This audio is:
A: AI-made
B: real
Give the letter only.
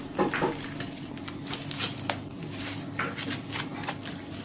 B